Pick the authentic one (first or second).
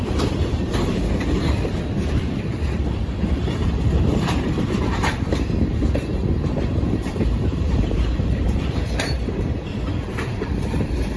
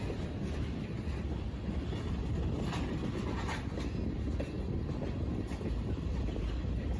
second